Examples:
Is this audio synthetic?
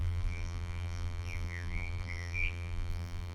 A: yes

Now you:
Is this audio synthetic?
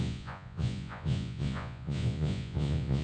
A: yes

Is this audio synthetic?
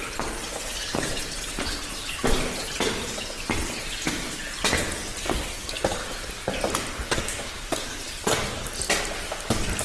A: no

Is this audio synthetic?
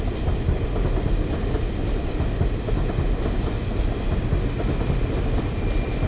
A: no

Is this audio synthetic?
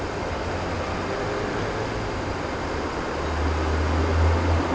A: no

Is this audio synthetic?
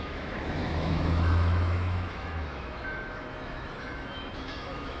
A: yes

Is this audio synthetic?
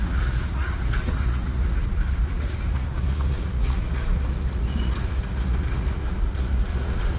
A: yes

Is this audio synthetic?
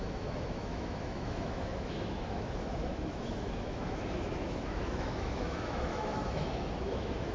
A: yes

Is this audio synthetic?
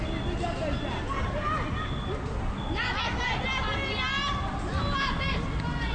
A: no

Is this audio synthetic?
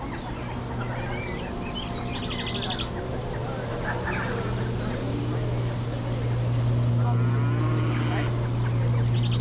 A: no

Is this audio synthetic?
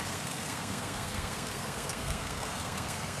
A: yes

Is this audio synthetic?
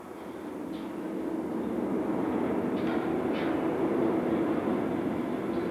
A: no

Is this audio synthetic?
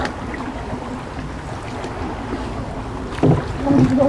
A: no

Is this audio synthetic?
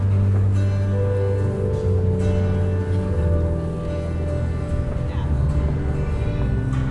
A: no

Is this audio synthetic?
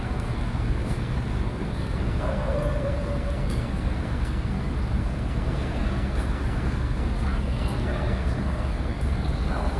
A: yes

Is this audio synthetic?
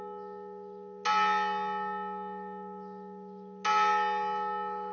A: no